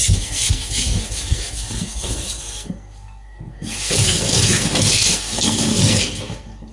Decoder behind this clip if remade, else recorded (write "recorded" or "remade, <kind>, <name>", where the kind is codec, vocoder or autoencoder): remade, codec, SNAC